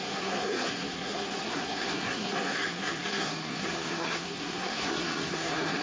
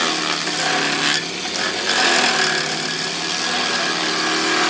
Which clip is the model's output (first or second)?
first